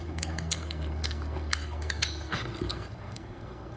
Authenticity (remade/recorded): remade